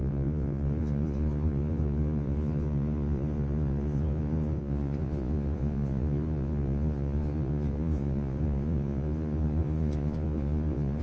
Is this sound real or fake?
fake